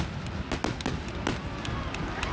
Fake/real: real